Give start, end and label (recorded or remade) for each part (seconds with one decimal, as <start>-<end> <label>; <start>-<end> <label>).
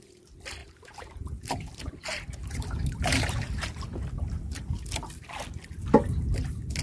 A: 0.0-0.6 recorded; 0.6-4.7 remade; 4.7-6.8 recorded